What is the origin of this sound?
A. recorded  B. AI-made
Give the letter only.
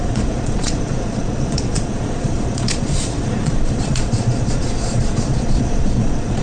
B